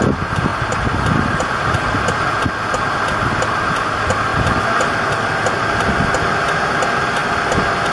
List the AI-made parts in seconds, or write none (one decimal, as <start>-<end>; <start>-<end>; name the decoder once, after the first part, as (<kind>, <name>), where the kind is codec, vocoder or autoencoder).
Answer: 0.5-2.5 (vocoder, BigVGAN v2); 4.3-5.1